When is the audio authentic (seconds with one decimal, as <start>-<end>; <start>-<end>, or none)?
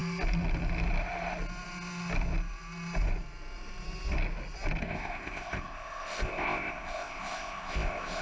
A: 0.0-4.8